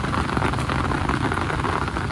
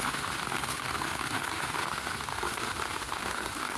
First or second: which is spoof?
second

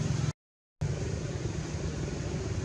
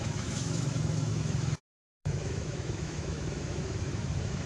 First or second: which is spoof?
second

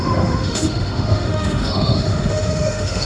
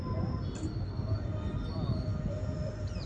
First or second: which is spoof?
first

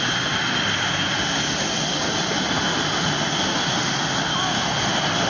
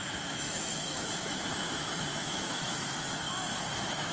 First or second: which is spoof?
second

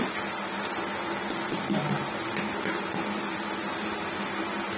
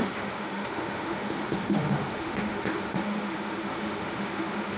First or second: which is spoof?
second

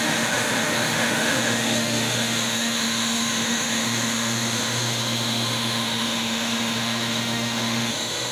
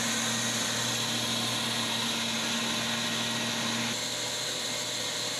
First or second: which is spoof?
first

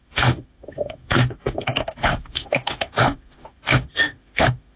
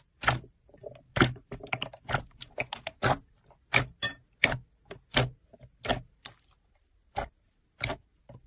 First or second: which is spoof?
first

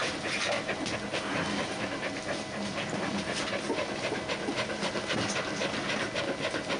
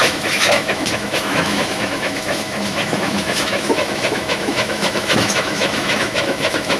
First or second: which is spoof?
second